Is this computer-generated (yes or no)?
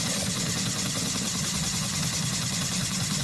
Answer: yes